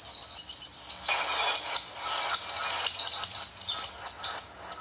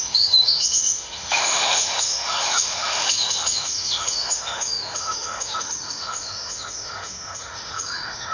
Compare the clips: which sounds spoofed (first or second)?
second